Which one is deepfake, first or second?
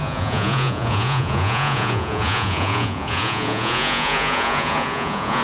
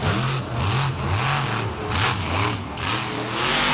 first